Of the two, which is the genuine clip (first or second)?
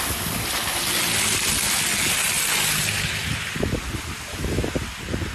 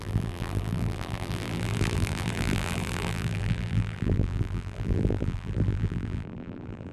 first